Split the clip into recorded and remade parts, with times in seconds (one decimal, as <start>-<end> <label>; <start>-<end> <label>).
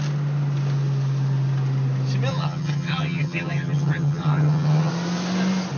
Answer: 0.0-2.3 recorded; 2.3-4.9 remade; 4.9-5.8 recorded